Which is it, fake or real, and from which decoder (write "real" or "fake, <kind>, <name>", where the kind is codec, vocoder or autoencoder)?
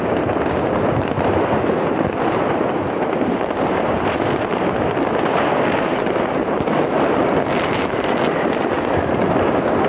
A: real